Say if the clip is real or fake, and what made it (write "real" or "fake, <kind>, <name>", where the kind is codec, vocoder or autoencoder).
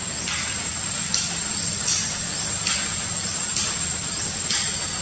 real